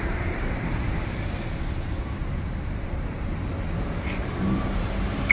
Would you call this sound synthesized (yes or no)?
yes